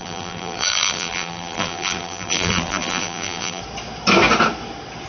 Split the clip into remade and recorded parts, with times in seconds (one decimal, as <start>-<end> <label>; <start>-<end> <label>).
0.0-3.6 remade; 3.6-5.1 recorded